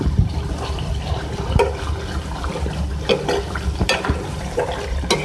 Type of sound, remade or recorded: recorded